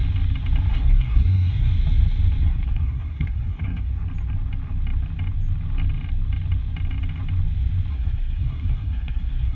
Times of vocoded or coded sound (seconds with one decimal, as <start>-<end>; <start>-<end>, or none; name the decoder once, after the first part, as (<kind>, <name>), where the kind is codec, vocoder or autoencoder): 0.7-1.7 (codec, SNAC); 2.4-3.9; 7.9-9.6